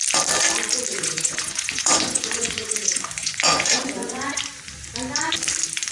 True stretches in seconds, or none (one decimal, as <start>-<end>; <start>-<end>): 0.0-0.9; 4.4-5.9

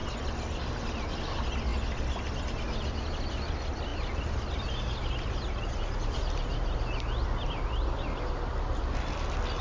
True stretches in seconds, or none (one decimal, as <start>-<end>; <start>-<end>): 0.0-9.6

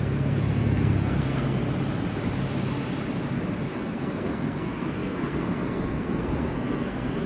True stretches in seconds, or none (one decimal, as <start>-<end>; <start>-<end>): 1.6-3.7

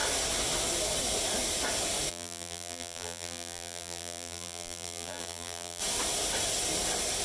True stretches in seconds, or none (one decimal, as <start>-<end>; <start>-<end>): 0.0-2.1; 5.8-7.2

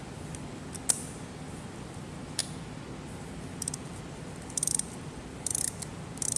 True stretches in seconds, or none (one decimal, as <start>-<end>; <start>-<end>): 0.0-6.4

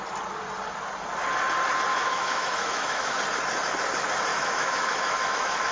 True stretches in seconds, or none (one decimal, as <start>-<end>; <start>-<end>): 0.0-1.9; 3.2-4.3